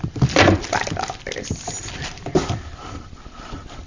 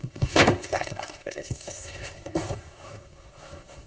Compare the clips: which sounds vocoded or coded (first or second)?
second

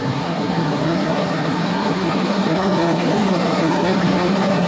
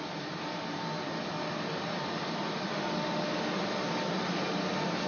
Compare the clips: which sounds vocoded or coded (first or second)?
first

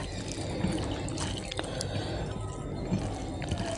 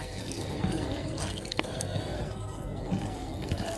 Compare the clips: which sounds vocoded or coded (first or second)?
second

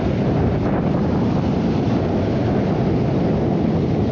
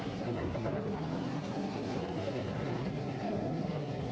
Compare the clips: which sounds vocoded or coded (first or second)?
second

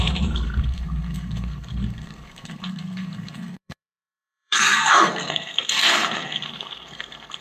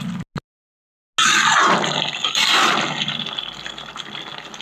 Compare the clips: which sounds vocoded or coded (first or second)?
first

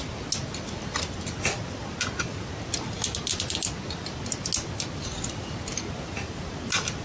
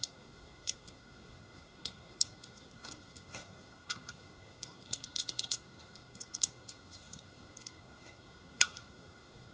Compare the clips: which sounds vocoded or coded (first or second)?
second